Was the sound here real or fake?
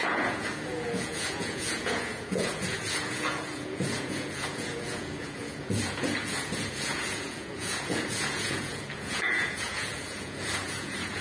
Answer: fake